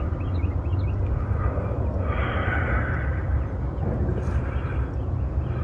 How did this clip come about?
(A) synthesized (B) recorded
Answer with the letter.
B